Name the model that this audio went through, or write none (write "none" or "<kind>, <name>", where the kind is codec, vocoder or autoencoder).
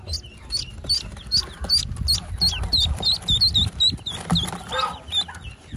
none